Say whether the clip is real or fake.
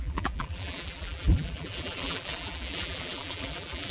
fake